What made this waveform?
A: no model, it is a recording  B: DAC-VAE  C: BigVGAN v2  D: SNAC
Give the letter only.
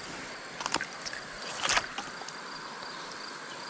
A